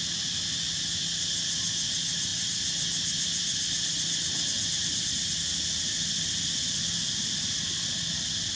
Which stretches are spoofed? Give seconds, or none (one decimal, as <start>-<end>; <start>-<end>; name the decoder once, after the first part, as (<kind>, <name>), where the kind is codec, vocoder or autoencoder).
none

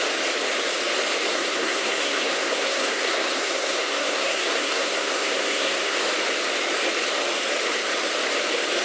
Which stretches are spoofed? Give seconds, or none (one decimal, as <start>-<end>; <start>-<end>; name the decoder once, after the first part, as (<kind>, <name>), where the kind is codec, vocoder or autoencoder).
1.3-6.0 (codec, SNAC)

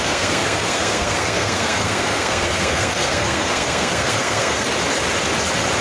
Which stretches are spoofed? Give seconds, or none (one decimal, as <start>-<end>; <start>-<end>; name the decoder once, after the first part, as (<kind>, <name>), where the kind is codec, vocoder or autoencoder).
0.0-4.7 (codec, SNAC)

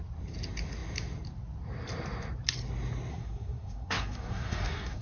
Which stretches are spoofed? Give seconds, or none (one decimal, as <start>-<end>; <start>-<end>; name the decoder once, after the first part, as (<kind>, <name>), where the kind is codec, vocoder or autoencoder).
3.1-5.0 (codec, SNAC)

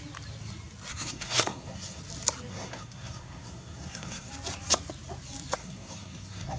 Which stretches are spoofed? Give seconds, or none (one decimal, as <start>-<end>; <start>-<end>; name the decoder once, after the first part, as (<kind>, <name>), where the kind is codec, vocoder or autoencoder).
0.9-2.0 (codec, SNAC); 2.5-4.3; 5.6-6.6

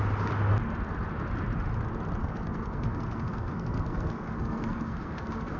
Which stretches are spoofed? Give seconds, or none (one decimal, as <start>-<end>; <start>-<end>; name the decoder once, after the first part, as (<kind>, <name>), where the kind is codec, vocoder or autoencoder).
2.2-5.6 (codec, SNAC)

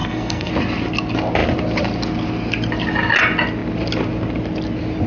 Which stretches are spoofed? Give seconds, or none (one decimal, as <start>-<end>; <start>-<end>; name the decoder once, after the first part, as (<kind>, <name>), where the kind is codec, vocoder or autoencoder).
0.0-0.5 (codec, SNAC)

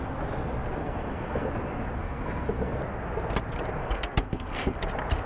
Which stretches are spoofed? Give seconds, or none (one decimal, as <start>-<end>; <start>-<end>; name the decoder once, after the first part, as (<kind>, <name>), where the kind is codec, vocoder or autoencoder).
0.8-1.5 (codec, SNAC); 2.0-2.7; 3.8-4.8